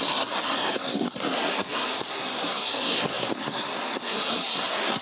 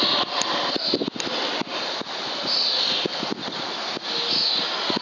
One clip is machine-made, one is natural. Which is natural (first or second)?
second